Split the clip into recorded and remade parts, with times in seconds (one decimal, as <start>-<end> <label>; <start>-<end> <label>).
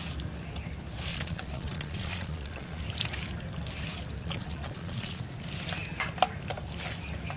0.0-1.1 recorded; 1.1-2.8 remade; 2.8-4.2 recorded; 4.2-5.2 remade; 5.2-7.4 recorded